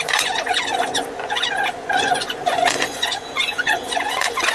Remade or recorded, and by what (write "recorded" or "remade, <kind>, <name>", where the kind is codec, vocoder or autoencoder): remade, vocoder, Vocos